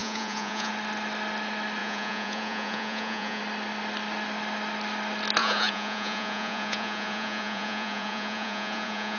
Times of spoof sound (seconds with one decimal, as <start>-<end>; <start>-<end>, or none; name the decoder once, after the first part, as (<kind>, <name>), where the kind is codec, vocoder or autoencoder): 0.0-0.7 (vocoder, Vocos); 1.8-3.4; 5.4-9.2

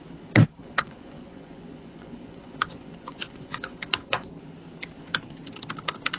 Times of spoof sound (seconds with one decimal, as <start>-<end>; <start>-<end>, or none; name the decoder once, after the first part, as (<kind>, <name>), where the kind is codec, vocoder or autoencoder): 0.6-4.3 (vocoder, Vocos)

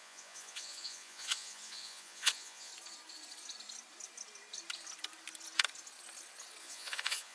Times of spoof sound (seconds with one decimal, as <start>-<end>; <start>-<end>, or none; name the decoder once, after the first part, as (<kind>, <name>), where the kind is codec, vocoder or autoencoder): 0.0-2.7 (vocoder, Vocos); 6.6-7.3